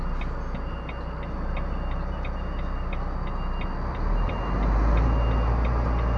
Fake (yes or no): no